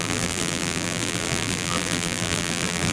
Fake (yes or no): yes